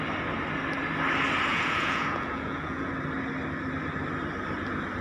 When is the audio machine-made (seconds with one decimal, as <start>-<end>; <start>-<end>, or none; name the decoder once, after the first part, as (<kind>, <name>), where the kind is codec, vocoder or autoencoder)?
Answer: 1.5-2.9 (vocoder, Vocos)